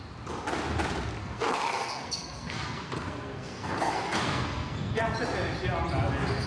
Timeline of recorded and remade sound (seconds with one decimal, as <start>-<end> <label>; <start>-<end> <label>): 0.0-1.2 recorded; 1.2-5.0 remade; 5.0-6.5 recorded